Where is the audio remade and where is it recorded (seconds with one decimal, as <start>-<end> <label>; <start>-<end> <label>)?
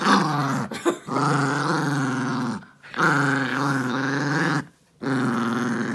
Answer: 0.0-3.5 recorded; 3.5-4.6 remade; 4.6-5.9 recorded